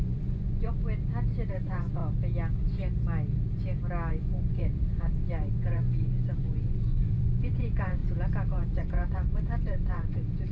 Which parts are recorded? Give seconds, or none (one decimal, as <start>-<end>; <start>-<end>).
0.8-1.5; 2.0-4.1; 8.0-8.5